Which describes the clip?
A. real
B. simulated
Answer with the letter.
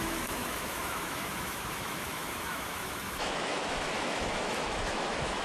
B